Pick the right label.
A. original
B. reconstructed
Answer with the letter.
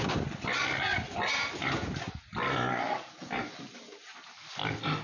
A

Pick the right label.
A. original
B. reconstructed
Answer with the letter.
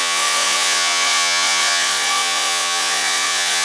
B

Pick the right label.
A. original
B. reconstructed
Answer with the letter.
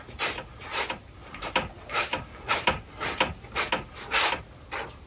A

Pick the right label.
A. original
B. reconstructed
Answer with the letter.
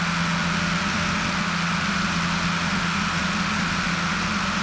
A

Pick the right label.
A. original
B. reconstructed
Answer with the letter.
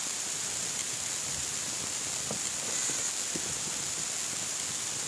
A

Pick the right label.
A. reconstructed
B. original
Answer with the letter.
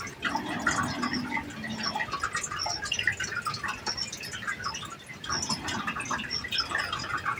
B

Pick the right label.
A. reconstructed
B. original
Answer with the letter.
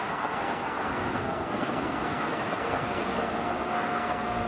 A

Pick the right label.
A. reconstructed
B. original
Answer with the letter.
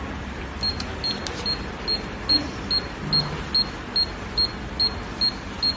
B